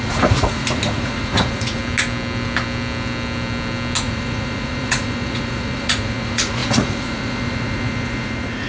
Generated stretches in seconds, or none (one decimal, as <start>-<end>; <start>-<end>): 0.0-1.8; 4.0-8.7